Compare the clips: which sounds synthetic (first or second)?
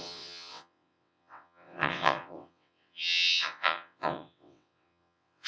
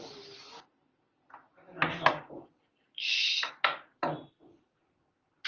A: first